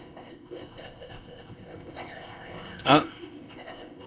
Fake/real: fake